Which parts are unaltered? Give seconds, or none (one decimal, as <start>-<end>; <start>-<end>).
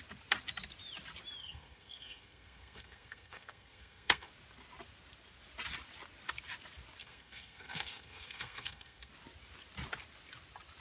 0.0-1.4; 4.3-7.0; 9.1-10.8